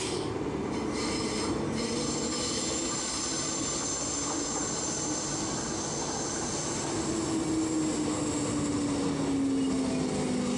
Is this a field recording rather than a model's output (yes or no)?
yes